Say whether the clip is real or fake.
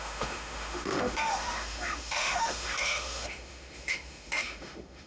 fake